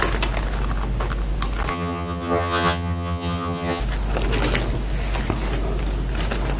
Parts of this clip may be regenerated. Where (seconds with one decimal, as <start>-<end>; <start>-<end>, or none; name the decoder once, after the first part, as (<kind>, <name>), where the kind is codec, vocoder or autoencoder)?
1.7-3.8 (vocoder, HiFi-GAN)